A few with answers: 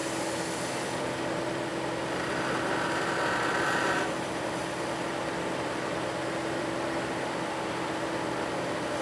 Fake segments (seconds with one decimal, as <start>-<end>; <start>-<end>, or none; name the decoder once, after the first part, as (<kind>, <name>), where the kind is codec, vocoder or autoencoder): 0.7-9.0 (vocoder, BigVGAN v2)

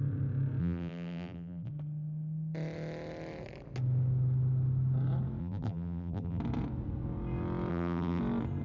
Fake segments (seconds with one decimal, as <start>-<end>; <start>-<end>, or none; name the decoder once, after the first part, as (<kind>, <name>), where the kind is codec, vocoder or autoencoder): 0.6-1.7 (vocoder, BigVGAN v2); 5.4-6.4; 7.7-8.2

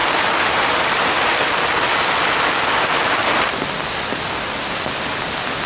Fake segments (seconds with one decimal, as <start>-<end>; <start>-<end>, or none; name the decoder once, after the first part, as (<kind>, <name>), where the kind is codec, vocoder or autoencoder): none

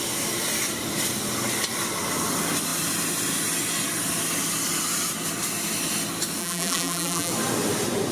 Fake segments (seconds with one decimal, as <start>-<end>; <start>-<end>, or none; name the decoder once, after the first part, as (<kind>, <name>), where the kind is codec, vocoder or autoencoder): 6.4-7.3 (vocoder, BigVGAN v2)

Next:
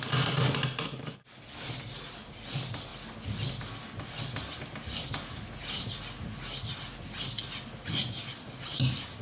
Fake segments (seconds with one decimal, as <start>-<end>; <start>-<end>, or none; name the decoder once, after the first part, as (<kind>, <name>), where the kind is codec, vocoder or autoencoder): none

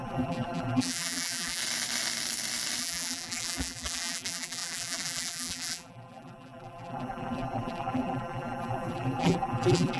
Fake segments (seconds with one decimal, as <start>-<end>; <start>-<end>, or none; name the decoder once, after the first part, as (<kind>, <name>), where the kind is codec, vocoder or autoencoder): 0.0-1.6 (vocoder, BigVGAN v2); 2.8-10.0

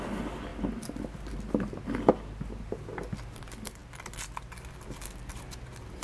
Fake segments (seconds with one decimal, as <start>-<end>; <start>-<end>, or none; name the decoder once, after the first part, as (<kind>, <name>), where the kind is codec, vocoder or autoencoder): none